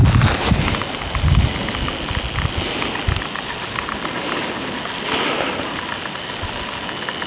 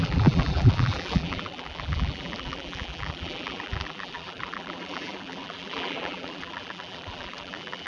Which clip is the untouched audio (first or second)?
first